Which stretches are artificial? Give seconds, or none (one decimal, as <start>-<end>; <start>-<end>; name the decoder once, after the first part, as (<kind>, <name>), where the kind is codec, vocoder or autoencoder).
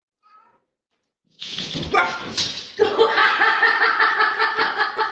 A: 1.1-1.7 (vocoder, Vocos)